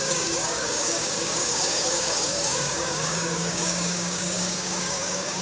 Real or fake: fake